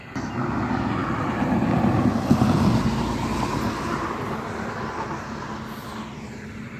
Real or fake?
real